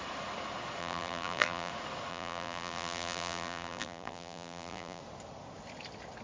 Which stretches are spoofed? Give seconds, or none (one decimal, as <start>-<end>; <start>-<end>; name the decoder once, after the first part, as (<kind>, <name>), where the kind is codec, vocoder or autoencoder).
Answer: 0.8-1.7 (vocoder, BigVGAN v2); 2.1-5.0